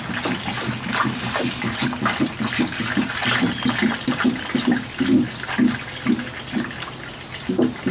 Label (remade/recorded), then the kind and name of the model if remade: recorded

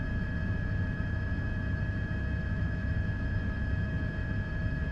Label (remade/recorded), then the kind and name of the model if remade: remade, autoencoder, DAC-VAE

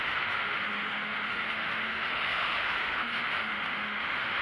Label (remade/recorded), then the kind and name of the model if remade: remade, autoencoder, DAC-VAE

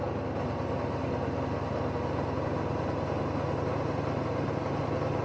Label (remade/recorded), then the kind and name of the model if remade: recorded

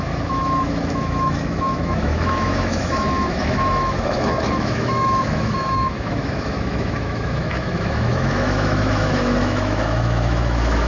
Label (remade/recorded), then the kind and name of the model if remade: remade, autoencoder, DAC-VAE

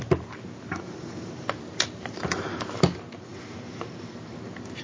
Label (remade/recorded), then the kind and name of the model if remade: recorded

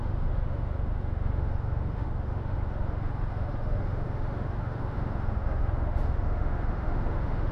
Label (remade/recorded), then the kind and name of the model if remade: remade, autoencoder, DAC-VAE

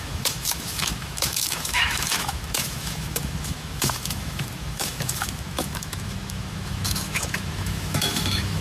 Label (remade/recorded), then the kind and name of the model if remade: remade, autoencoder, DAC-VAE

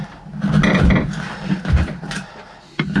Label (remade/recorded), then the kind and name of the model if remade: recorded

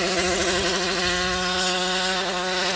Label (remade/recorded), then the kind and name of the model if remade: recorded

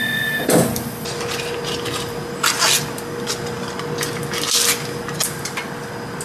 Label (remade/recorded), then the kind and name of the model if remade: recorded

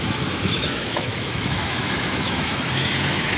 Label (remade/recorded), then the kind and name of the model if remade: remade, autoencoder, DAC-VAE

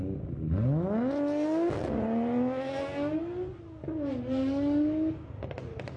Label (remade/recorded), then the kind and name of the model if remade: recorded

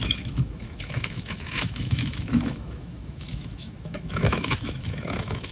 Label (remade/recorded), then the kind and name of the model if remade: remade, autoencoder, DAC-VAE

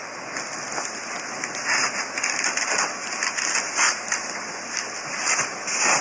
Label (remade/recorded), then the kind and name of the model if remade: recorded